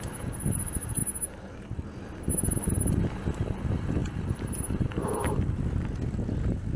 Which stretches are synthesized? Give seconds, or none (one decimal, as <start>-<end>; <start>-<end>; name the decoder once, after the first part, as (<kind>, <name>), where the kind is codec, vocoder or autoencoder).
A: none